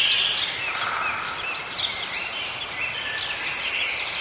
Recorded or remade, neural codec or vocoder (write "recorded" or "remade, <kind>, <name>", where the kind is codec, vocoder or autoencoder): recorded